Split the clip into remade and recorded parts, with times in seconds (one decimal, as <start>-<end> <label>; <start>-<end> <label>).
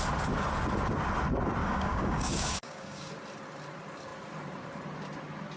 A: 0.0-1.6 recorded; 1.6-3.1 remade; 3.1-5.6 recorded